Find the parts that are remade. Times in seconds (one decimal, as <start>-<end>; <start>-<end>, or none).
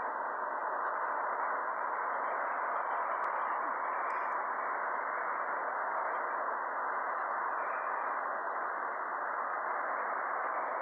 none